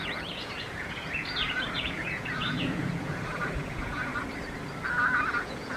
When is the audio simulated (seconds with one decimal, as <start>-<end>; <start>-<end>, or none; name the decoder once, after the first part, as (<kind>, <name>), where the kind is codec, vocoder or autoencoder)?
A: 0.0-4.1 (vocoder, Vocos); 4.9-5.8